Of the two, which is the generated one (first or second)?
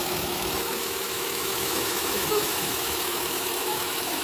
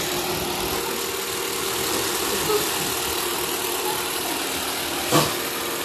first